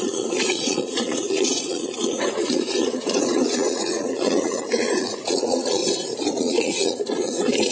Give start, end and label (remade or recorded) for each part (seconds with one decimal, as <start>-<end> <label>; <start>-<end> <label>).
0.0-5.8 remade; 5.8-6.4 recorded; 6.4-7.7 remade

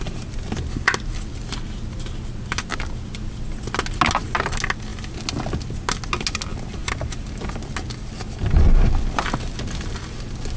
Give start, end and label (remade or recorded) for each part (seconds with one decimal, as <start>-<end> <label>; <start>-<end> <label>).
0.0-10.6 recorded

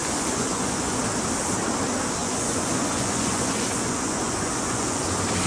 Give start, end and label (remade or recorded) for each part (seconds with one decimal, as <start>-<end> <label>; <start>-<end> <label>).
0.0-1.0 remade; 1.0-2.2 recorded; 2.2-5.0 remade; 5.0-5.5 recorded